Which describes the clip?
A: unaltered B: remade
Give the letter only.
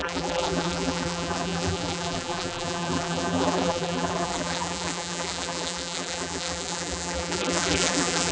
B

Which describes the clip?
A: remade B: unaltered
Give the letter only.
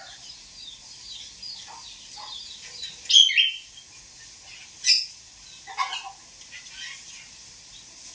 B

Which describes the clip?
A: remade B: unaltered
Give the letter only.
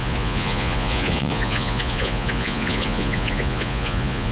A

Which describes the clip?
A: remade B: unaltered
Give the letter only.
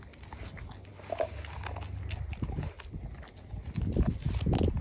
B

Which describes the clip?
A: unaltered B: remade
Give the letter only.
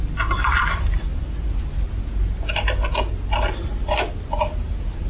A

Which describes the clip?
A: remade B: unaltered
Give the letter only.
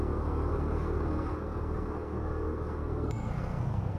A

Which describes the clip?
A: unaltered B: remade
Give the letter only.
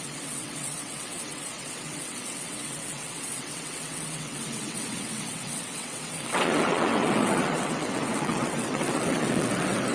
B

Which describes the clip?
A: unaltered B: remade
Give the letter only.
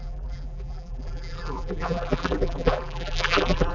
B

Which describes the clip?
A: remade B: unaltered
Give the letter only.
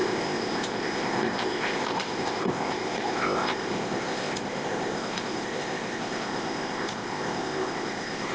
A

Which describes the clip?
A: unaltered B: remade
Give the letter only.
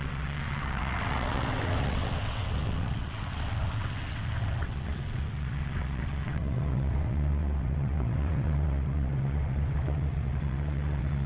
B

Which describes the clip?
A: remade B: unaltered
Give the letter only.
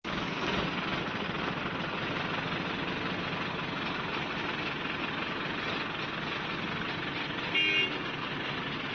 B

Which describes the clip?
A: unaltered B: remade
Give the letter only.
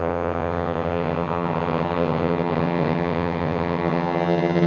B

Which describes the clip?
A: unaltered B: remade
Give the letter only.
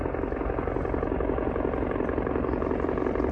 A